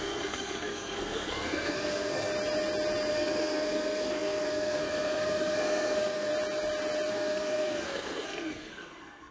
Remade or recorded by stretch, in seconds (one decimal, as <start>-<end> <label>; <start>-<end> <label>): 0.0-2.3 remade; 2.3-3.1 recorded; 3.1-6.3 remade; 6.3-7.1 recorded; 7.1-9.3 remade